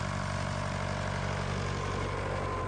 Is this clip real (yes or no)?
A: yes